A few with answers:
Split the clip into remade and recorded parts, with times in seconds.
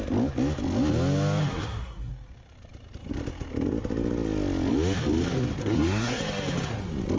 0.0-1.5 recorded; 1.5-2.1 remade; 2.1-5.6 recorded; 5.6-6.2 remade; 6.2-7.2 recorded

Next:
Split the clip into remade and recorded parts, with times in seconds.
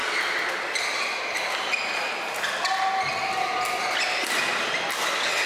0.0-5.5 recorded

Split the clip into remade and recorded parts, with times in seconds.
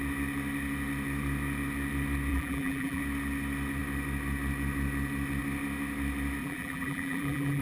0.0-2.3 recorded; 2.3-3.0 remade; 3.0-6.4 recorded; 6.4-7.6 remade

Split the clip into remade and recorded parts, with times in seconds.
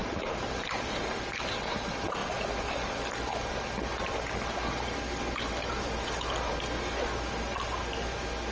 0.0-1.0 remade; 1.0-8.5 recorded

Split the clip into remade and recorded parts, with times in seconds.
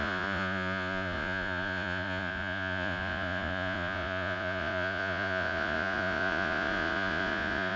0.0-7.8 remade